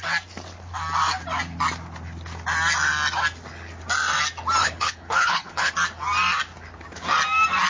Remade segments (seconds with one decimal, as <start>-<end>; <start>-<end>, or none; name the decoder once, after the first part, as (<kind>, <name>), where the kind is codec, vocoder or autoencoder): 4.6-5.7 (codec, HILCodec)